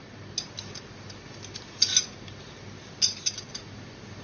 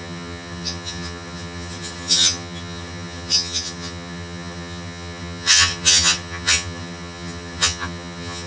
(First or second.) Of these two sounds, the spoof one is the second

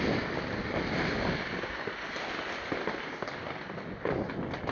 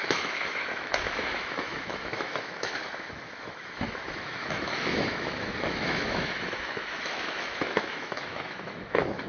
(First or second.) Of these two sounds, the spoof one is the second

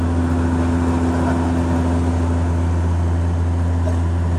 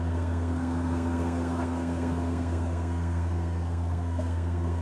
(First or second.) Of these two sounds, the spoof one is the second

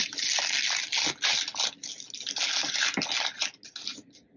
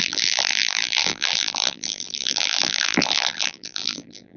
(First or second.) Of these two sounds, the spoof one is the second